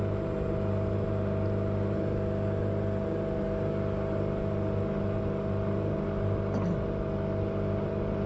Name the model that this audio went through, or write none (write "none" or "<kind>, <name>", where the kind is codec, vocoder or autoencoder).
none